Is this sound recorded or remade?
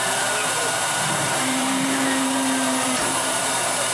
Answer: remade